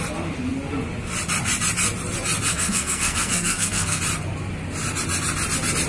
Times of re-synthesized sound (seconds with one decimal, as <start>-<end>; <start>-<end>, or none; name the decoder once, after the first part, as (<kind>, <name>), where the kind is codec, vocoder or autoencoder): 2.5-4.0 (codec, SNAC)